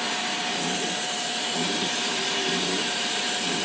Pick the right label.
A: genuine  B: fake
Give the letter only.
B